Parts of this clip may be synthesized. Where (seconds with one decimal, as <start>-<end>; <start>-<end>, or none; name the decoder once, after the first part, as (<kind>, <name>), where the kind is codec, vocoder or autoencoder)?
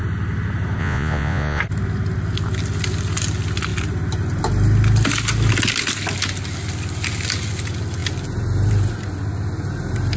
0.8-1.6 (vocoder, Vocos)